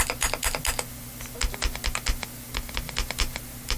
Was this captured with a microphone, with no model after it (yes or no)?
yes